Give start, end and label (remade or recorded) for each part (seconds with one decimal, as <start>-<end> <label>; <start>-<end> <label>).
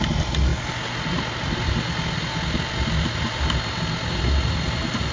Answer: 0.0-5.1 recorded